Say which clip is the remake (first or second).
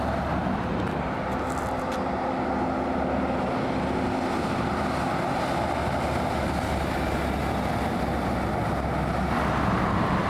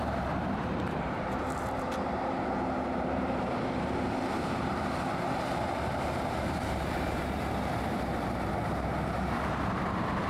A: second